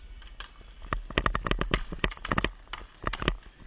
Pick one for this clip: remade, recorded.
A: recorded